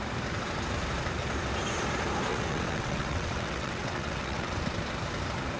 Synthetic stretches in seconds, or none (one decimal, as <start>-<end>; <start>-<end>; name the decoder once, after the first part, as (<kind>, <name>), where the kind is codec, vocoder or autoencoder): 2.3-4.6 (vocoder, WaveNeXt)